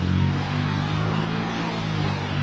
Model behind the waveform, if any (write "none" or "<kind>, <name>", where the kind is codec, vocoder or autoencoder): codec, DAC